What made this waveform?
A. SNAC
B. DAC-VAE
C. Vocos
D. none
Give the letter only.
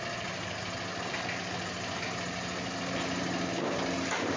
D